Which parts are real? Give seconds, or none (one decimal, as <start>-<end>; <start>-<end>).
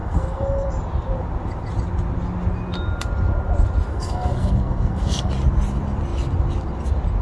0.7-3.9; 5.3-7.2